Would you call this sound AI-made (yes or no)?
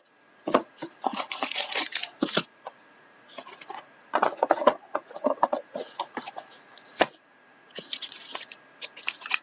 yes